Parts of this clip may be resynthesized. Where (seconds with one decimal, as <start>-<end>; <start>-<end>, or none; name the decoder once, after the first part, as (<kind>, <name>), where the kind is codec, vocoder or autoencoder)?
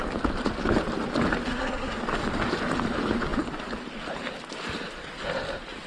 1.5-2.0 (codec, SNAC)